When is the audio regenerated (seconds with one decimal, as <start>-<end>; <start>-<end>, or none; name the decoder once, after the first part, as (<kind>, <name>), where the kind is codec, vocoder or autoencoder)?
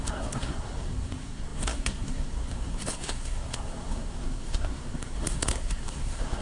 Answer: 0.0-6.4 (codec, SNAC)